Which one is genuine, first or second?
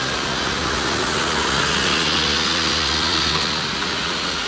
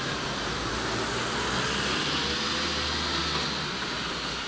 second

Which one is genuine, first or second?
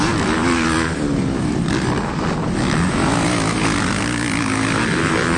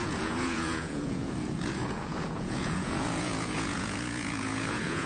first